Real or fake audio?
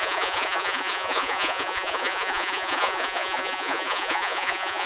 fake